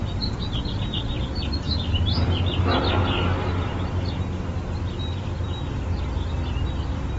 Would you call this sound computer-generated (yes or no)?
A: no